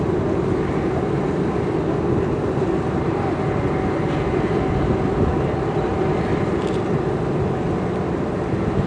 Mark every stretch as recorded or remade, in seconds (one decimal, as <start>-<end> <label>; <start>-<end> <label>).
0.0-8.9 recorded